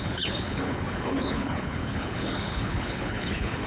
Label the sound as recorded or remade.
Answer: remade